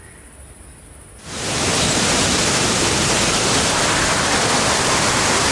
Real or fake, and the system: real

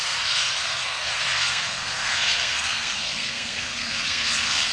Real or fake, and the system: fake, codec, SNAC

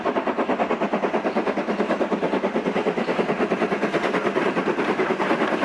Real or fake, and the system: real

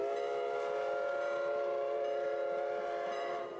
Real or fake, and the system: real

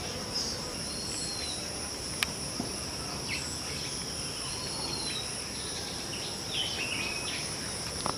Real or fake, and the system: real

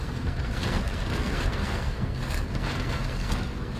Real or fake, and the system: fake, codec, SNAC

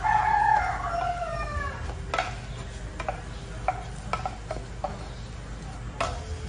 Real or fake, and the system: real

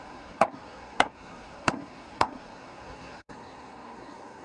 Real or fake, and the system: fake, codec, SNAC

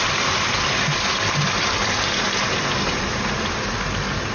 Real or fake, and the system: real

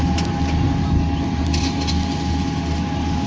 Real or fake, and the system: real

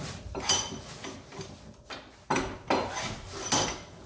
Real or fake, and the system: real